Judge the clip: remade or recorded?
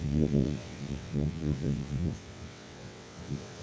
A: remade